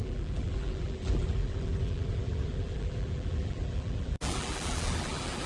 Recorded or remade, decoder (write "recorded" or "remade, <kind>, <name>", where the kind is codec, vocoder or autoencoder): remade, vocoder, BigVGAN v2